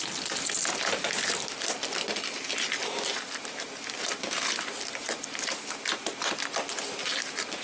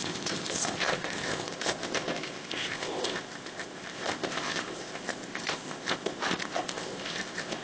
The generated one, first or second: second